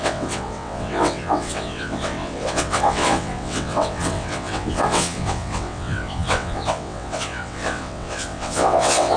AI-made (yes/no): yes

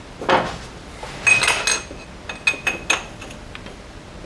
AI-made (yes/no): no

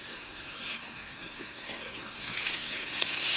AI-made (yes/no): yes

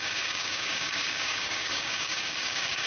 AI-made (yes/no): yes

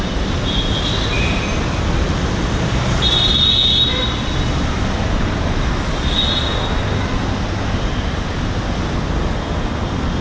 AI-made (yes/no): no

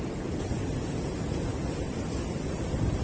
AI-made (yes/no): no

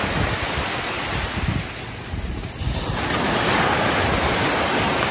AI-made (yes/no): no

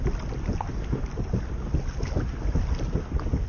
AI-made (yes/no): no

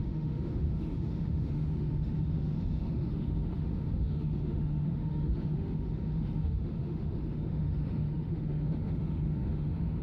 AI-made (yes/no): yes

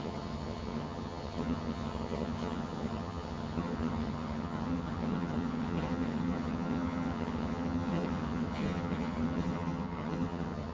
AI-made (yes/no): yes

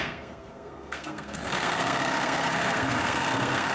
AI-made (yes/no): yes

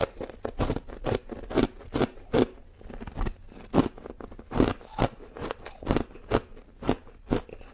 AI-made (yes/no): no